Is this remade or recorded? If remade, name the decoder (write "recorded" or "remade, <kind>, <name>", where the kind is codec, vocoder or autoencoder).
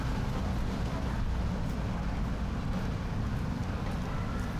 recorded